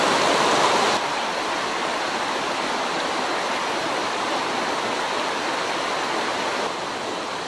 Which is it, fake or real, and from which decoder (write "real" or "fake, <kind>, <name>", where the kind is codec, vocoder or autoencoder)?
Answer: real